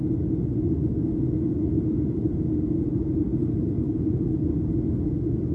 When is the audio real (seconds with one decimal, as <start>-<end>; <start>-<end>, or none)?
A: 0.0-5.5